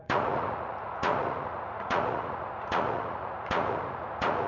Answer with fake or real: fake